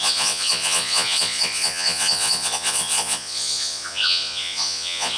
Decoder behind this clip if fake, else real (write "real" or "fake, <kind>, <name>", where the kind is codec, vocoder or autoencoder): fake, vocoder, Vocos